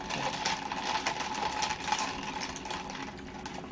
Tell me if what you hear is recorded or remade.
recorded